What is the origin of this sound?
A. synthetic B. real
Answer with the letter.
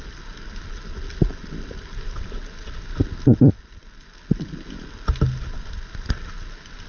B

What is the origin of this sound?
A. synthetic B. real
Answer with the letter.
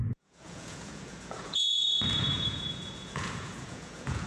A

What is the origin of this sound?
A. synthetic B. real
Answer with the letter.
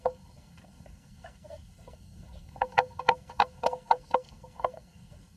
A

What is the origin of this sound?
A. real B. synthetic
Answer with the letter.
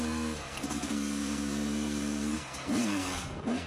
B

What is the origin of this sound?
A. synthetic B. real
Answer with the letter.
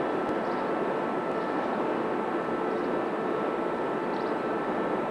B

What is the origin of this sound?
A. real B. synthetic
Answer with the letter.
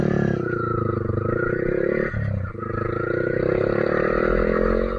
A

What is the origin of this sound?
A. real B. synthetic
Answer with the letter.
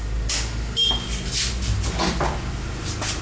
A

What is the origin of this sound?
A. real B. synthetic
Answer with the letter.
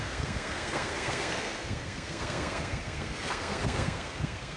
B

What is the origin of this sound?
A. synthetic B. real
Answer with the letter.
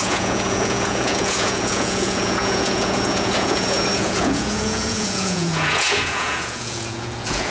A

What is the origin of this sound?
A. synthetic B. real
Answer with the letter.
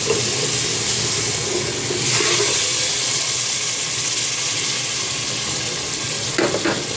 B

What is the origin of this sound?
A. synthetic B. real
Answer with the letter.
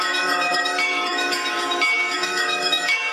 A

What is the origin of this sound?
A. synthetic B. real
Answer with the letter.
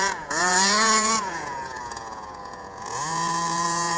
A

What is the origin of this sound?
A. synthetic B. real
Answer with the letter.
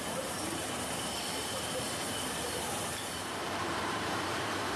A